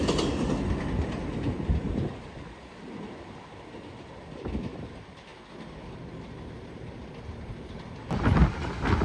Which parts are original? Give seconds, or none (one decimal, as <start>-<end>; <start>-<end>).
0.0-9.0